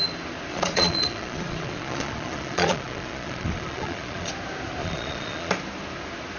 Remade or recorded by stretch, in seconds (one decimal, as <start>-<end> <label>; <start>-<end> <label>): 0.0-0.5 recorded; 0.5-4.3 remade; 4.3-4.8 recorded; 4.8-5.5 remade; 5.5-6.4 recorded